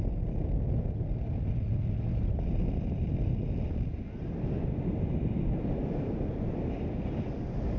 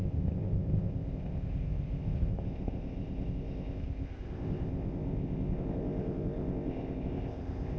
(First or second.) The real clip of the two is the first